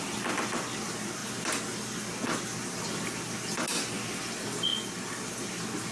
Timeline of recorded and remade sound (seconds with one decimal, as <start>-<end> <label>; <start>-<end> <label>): 0.0-5.9 recorded